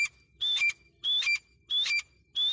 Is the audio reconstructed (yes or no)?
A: no